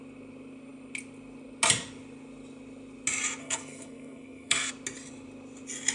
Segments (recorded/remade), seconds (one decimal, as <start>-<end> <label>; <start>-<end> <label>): 0.0-3.4 recorded; 3.4-4.7 remade; 4.7-5.9 recorded